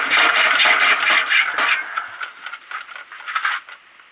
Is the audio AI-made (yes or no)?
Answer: no